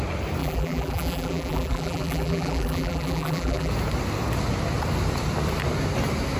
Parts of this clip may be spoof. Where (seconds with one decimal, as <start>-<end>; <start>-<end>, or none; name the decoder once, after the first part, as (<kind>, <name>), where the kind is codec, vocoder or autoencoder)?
0.4-3.7 (vocoder, BigVGAN v2)